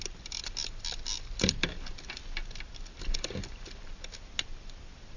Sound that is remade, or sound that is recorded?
recorded